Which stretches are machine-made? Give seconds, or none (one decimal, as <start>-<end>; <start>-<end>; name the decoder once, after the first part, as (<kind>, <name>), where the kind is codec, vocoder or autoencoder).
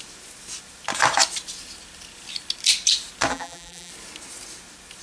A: 3.3-3.9 (vocoder, BigVGAN v2)